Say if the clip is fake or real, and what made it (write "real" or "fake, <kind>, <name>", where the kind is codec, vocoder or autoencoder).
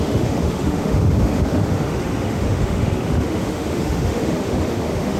fake, autoencoder, DAC-VAE